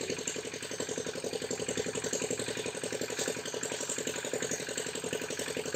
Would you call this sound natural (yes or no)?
yes